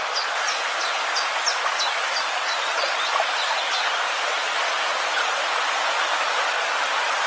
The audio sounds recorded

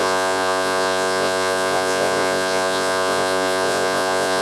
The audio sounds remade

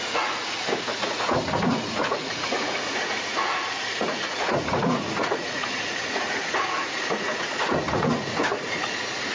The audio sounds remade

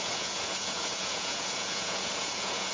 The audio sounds remade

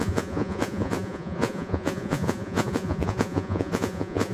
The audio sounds remade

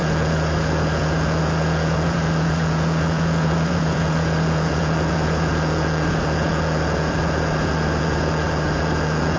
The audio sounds remade